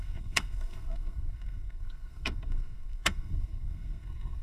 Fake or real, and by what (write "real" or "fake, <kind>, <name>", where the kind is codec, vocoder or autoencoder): fake, codec, SNAC